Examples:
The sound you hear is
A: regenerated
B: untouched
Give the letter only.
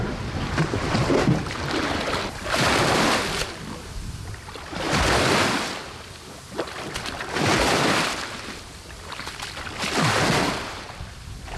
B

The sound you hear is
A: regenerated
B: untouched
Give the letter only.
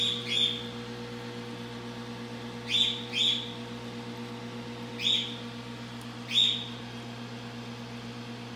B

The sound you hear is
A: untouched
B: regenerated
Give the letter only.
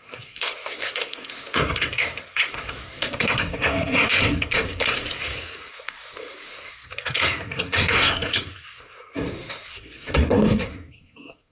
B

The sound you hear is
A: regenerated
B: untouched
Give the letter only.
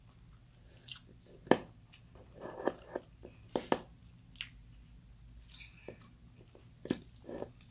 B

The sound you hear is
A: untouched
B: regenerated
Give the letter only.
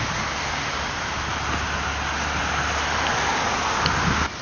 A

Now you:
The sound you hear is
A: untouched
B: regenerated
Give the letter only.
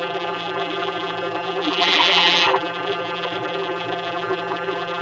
B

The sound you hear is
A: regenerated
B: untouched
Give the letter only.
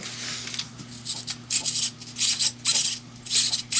B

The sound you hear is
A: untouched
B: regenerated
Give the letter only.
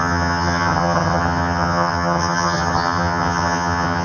B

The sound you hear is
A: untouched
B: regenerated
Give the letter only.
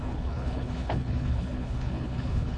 B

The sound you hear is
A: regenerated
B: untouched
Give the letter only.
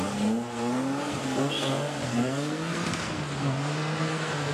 A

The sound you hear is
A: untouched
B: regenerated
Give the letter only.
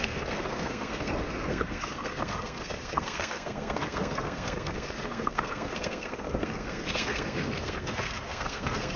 B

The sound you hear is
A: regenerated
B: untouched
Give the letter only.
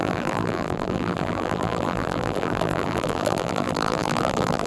A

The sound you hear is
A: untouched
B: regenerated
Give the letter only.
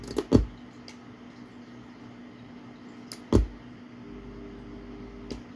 A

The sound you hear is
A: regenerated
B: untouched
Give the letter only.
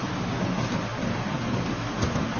B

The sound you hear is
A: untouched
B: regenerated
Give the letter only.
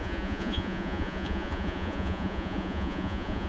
B